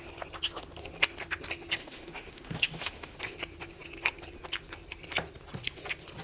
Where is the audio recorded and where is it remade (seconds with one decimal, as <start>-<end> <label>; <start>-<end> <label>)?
0.0-1.8 recorded; 1.8-3.2 remade; 3.2-6.2 recorded